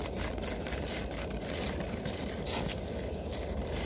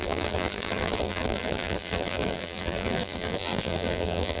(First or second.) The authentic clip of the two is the first